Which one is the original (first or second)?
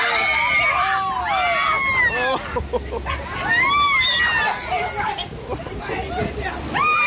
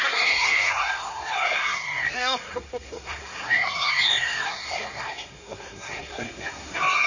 first